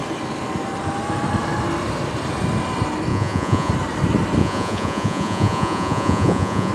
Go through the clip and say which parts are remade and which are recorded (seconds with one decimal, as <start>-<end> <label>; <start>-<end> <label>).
0.0-3.1 recorded; 3.1-3.7 remade; 3.7-4.4 recorded; 4.4-6.7 remade